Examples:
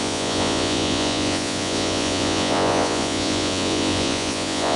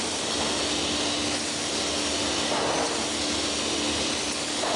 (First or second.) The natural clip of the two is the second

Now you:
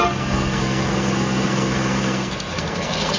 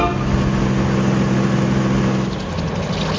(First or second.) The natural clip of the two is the second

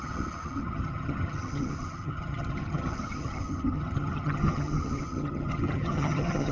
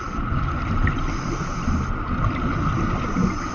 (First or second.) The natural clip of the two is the second